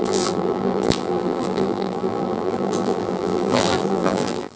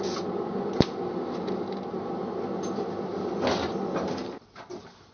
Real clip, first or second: second